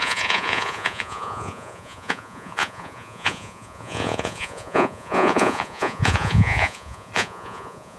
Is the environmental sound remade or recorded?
remade